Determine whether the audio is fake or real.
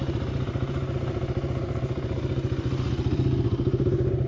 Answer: real